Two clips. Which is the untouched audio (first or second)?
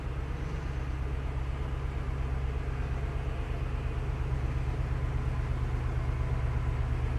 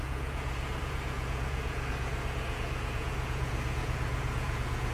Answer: first